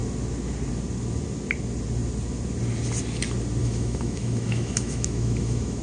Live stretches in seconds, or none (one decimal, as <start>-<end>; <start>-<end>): 0.0-3.6